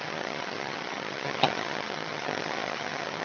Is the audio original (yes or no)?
no